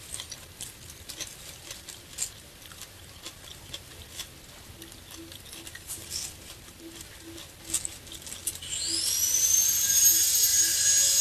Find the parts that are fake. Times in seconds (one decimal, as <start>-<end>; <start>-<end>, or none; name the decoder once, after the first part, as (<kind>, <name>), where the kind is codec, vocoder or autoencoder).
none